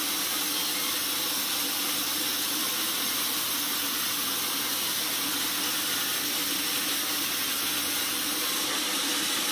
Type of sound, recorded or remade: recorded